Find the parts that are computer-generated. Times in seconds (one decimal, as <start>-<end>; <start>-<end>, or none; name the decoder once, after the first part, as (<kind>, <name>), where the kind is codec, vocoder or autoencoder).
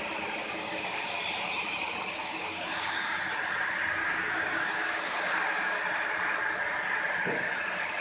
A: 0.4-1.0 (codec, DAC); 2.2-3.2; 4.0-5.8